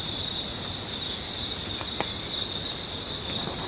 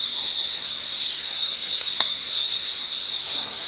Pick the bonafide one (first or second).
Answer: first